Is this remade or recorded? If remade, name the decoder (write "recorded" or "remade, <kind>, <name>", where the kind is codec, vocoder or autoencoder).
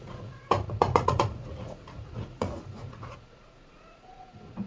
remade, vocoder, Vocos